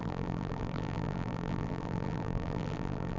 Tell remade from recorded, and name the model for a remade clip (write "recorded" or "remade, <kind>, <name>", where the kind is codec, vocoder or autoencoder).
remade, vocoder, BigVGAN v2